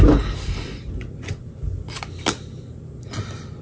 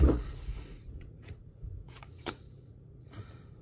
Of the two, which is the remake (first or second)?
second